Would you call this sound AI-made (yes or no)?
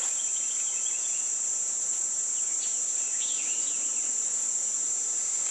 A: yes